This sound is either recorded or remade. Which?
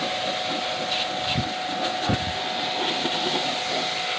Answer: recorded